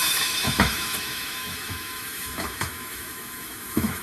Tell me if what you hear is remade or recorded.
remade